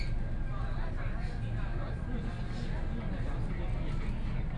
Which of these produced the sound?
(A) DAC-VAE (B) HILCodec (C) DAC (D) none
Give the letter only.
D